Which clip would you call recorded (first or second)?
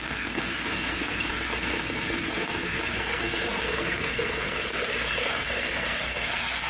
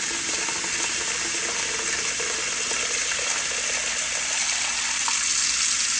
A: second